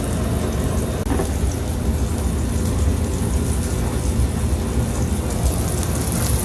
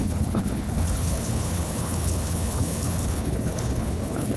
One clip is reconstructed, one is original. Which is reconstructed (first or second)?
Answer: second